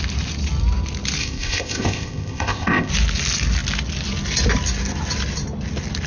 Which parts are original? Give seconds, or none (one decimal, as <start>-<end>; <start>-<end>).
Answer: 0.0-1.2; 2.9-6.1

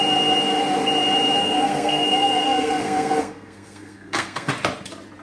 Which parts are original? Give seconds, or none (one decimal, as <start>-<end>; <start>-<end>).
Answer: 0.0-1.4; 4.5-5.2

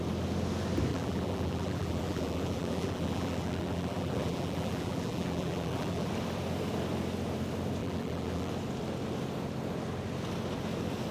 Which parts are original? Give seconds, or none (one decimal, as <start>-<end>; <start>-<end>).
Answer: 0.0-0.9; 6.1-7.8; 8.5-11.1